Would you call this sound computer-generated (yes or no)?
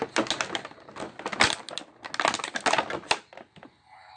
no